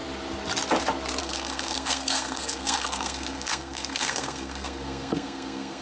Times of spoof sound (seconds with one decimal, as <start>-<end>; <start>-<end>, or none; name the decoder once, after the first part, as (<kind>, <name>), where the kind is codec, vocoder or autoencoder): 1.2-5.8 (codec, SNAC)